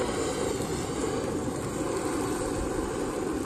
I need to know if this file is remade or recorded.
recorded